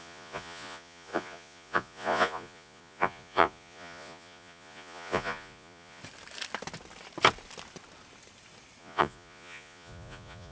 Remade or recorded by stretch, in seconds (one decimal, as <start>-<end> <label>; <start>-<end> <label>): 0.0-6.0 remade; 6.0-8.8 recorded; 8.8-10.5 remade